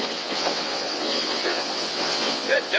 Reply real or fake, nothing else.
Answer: fake